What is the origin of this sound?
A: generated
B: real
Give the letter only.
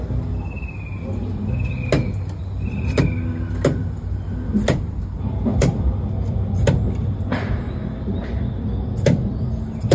B